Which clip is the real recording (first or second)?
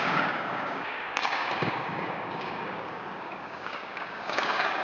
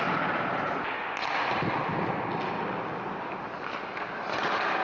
second